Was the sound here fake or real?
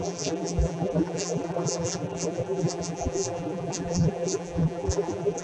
fake